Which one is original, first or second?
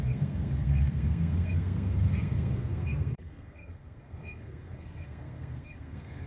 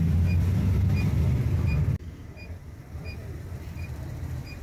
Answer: second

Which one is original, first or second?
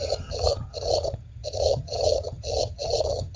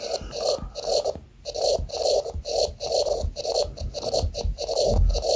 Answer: second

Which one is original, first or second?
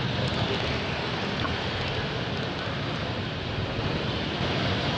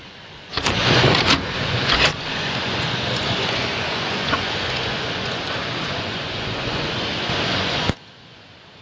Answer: first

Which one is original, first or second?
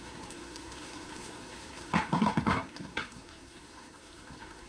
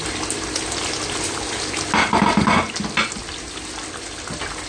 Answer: second